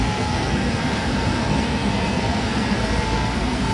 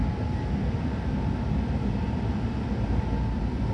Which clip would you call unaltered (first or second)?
second